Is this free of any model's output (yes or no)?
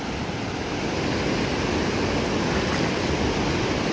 yes